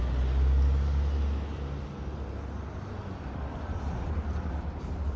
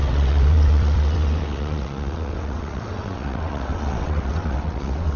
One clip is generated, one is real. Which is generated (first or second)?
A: second